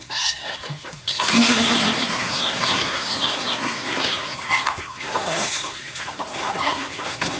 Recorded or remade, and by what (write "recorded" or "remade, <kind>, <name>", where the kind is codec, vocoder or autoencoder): remade, codec, SNAC